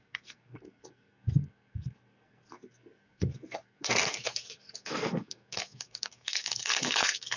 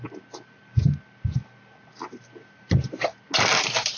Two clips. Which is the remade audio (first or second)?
first